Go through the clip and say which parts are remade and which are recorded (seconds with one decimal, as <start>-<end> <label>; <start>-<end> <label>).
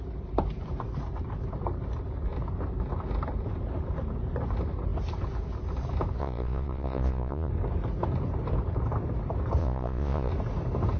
0.0-6.2 recorded; 6.2-7.5 remade; 7.5-9.6 recorded; 9.6-10.3 remade; 10.3-11.0 recorded